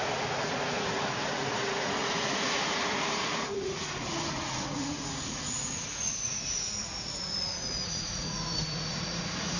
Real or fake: fake